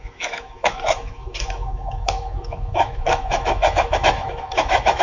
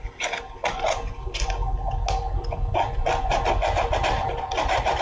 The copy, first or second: first